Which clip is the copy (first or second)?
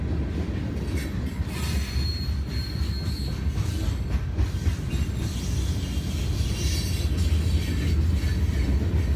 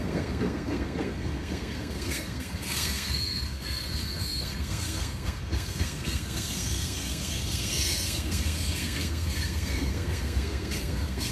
second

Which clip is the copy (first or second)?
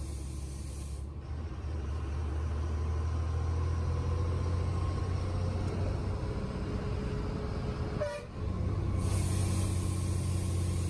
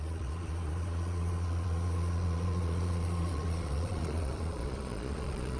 second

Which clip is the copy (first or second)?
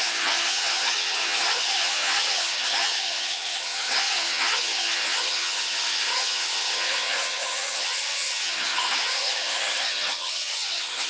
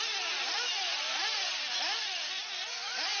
first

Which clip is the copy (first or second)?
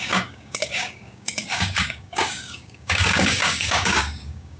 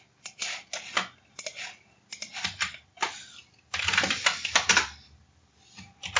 first